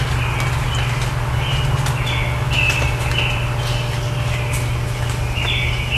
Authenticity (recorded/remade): recorded